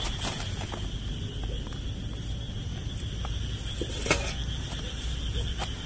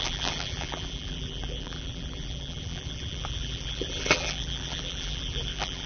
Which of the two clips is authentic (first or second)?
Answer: first